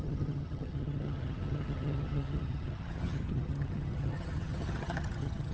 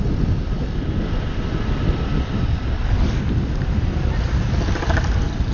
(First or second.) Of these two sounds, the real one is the second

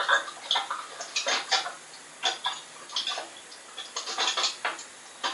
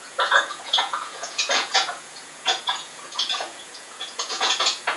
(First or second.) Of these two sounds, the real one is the first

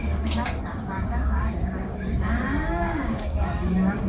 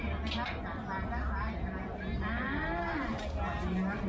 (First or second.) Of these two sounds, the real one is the second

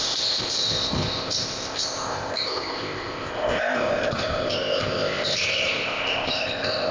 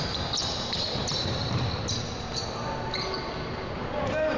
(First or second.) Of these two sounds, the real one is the second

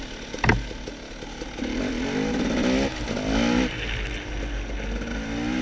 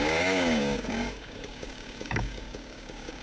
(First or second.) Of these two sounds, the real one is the first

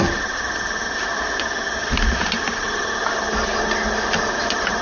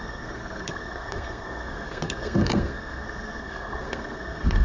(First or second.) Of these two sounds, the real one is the first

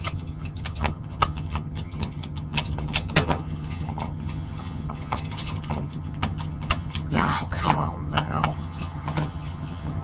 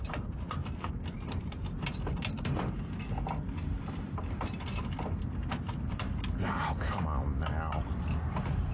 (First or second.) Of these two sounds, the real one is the second